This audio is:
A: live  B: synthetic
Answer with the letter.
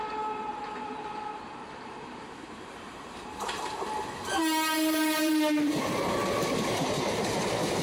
B